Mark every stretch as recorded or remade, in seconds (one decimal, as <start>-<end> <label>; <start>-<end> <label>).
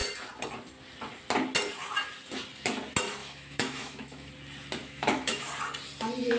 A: 0.0-3.2 recorded; 3.2-4.3 remade; 4.3-4.8 recorded; 4.8-5.5 remade; 5.5-6.4 recorded